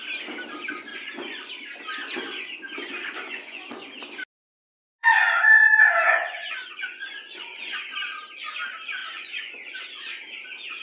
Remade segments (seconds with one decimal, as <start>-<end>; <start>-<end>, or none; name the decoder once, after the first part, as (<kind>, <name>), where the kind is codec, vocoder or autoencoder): 0.9-1.5 (vocoder, Vocos); 1.9-3.9; 5.0-7.8; 9.0-9.8